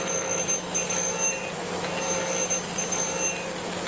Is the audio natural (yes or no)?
yes